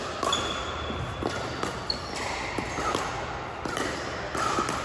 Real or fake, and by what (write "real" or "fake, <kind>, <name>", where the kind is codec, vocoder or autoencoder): real